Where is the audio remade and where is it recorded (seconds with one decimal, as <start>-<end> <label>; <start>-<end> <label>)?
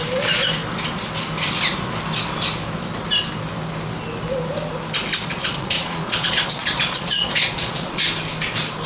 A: 0.0-5.3 recorded; 5.3-8.0 remade; 8.0-8.9 recorded